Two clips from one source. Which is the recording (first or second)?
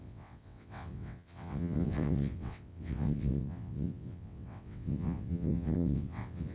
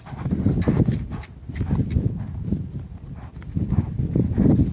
second